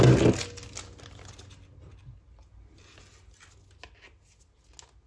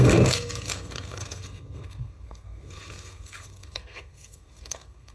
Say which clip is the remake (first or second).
second